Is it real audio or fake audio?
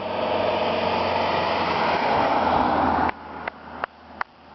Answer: real